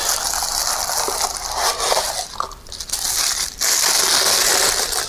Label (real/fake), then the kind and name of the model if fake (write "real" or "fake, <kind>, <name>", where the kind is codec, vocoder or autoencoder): real